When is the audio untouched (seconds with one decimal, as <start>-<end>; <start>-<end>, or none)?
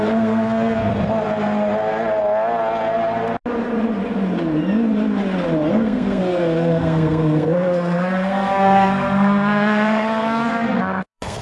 0.9-5.7